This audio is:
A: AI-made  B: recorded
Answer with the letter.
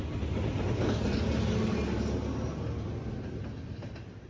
B